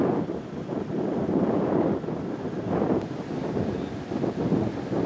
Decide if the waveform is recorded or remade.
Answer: recorded